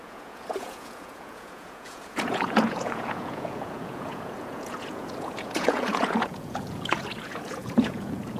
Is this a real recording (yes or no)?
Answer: no